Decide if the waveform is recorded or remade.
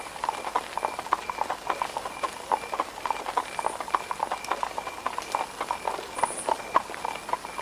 recorded